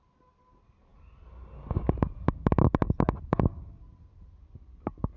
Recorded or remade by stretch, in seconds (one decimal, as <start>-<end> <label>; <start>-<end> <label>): 0.0-5.2 recorded